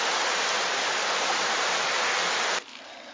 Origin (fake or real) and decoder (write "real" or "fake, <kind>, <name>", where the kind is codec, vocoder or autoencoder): real